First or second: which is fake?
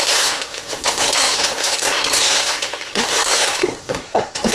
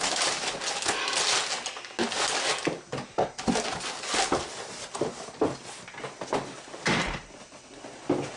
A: first